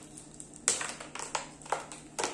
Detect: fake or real real